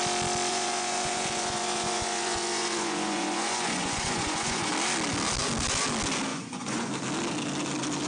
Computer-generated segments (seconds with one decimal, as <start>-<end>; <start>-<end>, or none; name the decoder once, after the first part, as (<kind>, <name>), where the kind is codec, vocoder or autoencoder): 0.5-4.7 (vocoder, Vocos); 6.3-6.9